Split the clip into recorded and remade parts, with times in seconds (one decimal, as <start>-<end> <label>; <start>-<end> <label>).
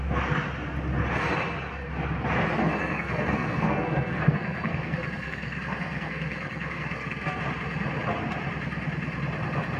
0.0-2.8 recorded; 2.8-7.4 remade; 7.4-9.8 recorded